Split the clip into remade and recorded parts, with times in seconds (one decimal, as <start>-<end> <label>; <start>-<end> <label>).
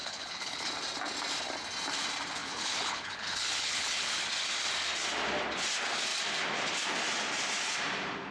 0.0-0.7 remade; 0.7-2.4 recorded; 2.4-4.1 remade; 4.1-8.3 recorded